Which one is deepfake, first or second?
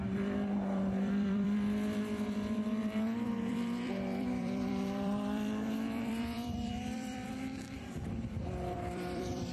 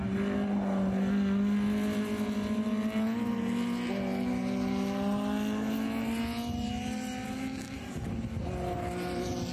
first